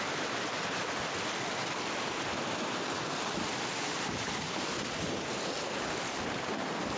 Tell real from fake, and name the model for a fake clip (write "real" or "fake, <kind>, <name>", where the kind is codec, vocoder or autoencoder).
real